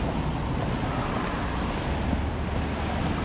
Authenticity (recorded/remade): recorded